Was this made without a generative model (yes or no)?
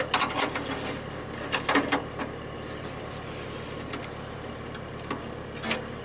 yes